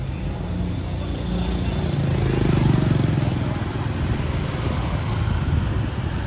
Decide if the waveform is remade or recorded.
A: recorded